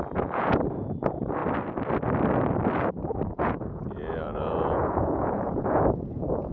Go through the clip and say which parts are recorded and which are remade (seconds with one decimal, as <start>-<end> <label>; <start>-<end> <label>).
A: 0.0-1.4 remade; 1.4-3.4 recorded; 3.4-6.5 remade